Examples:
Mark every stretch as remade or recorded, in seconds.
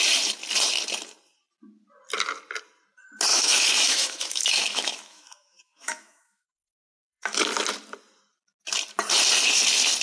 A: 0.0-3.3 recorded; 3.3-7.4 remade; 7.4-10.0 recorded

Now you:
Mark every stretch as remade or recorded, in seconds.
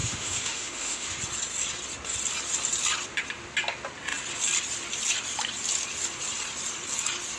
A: 0.0-1.2 remade; 1.2-7.4 recorded